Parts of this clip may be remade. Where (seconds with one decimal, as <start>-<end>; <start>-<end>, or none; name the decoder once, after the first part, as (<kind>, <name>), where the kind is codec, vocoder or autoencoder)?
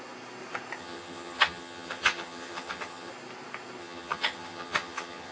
0.8-3.1 (vocoder, HiFi-GAN); 3.8-5.3